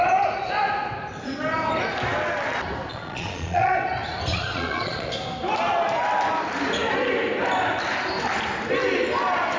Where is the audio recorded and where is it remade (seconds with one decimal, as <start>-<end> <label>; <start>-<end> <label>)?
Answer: 0.0-2.9 recorded; 2.9-3.7 remade; 3.7-4.3 recorded; 4.3-5.1 remade; 5.1-9.6 recorded